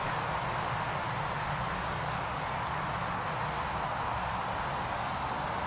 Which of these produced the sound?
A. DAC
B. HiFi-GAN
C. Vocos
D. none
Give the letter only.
D